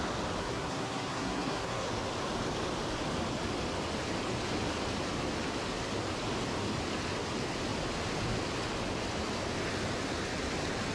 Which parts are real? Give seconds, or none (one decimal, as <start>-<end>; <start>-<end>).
0.0-0.4; 1.9-10.9